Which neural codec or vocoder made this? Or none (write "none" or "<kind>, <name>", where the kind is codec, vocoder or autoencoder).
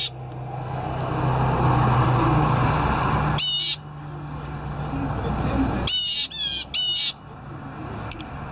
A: none